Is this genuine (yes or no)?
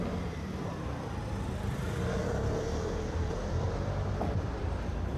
no